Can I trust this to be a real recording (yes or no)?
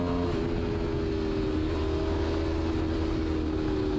yes